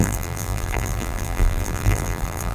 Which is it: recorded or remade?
remade